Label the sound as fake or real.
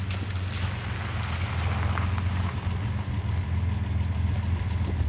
real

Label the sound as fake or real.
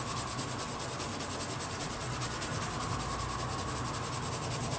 real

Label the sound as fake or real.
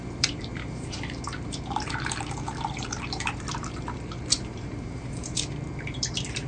fake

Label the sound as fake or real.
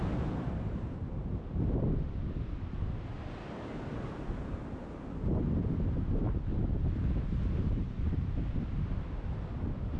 real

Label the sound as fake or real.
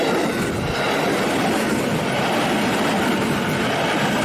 fake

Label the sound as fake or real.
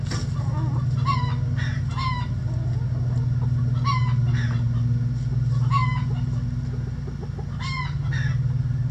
real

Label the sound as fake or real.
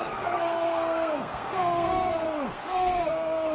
fake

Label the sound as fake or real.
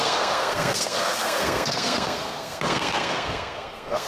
fake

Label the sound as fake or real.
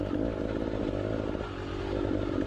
real